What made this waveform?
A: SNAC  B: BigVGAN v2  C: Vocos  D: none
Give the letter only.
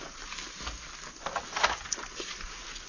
D